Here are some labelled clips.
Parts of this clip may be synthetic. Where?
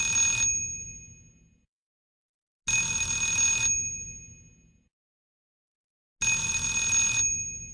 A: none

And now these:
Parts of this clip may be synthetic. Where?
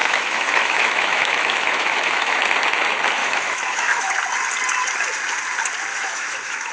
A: 0.0-2.4 (autoencoder, DAC-VAE); 3.2-4.1; 5.9-6.7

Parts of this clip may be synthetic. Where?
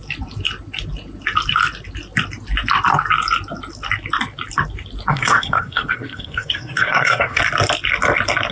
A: 5.1-7.4 (codec, SNAC)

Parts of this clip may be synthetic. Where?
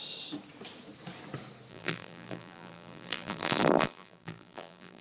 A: 1.7-5.0 (vocoder, BigVGAN v2)